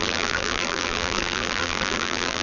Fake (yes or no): yes